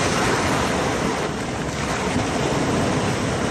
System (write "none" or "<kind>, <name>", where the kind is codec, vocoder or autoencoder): none